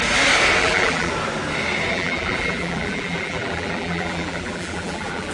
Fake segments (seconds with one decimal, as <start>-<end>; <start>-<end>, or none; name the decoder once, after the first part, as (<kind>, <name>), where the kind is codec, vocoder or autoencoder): 0.6-1.1 (vocoder, BigVGAN v2); 1.9-5.3